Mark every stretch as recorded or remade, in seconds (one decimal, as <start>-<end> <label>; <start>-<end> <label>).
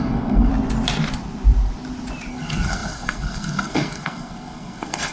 0.0-0.5 remade; 0.5-2.3 recorded; 2.3-5.1 remade